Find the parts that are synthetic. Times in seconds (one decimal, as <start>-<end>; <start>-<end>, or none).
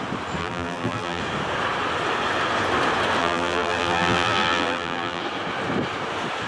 0.4-1.2; 3.2-5.2